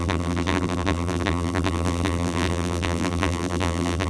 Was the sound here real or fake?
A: fake